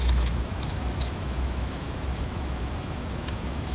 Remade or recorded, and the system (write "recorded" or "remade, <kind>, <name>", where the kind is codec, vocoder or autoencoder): remade, autoencoder, DAC-VAE